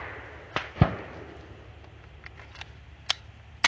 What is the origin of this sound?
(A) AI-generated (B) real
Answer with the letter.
B